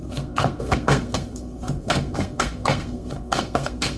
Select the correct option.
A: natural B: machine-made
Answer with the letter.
B